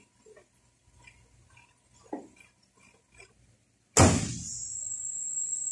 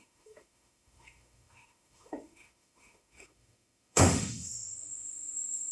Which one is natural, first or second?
first